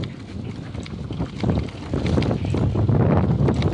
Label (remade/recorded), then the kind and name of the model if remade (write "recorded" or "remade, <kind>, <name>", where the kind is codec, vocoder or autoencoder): recorded